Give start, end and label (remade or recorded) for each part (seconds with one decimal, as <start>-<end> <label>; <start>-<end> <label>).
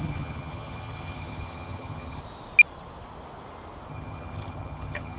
0.0-2.2 remade; 2.2-3.9 recorded; 3.9-5.2 remade